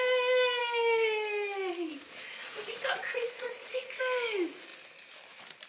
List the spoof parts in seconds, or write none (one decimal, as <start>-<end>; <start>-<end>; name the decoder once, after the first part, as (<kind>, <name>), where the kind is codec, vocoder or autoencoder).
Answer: 2.4-4.0 (vocoder, Vocos)